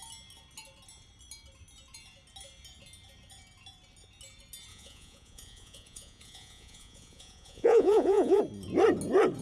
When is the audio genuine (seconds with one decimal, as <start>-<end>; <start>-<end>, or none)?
0.0-4.7; 8.4-9.4